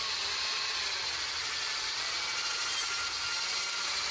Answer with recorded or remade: recorded